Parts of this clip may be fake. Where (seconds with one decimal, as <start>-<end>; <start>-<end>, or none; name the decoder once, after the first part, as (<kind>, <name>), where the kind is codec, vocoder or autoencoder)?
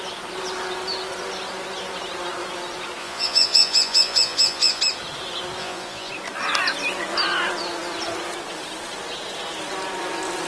3.0-4.8 (vocoder, Vocos); 5.6-6.1